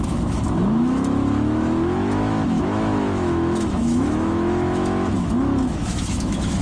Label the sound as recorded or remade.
remade